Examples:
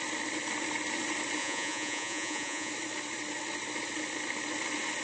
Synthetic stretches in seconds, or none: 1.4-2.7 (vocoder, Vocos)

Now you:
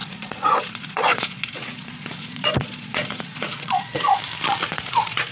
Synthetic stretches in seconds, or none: 0.0-4.2 (vocoder, Vocos); 4.7-5.3

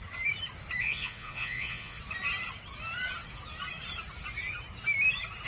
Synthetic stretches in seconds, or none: 0.8-2.0 (vocoder, Vocos)